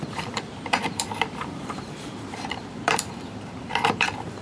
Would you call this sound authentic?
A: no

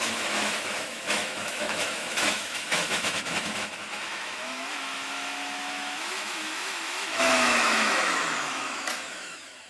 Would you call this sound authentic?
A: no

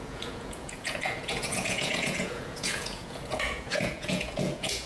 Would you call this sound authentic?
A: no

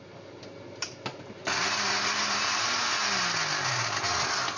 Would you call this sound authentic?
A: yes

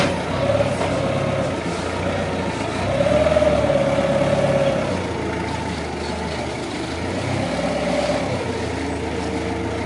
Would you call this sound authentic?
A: yes